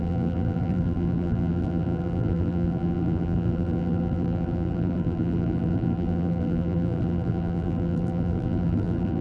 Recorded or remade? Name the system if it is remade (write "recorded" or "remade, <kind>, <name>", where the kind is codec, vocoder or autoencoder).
remade, vocoder, BigVGAN v2